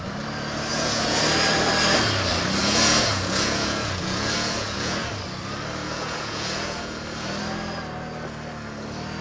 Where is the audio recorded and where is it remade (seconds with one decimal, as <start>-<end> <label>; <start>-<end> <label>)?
0.0-0.7 recorded; 0.7-1.2 remade; 1.2-2.6 recorded; 2.6-5.1 remade; 5.1-5.8 recorded; 5.8-7.0 remade; 7.0-9.2 recorded